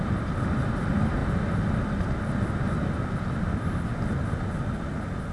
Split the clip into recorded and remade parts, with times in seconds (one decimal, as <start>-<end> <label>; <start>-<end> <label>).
0.0-5.3 recorded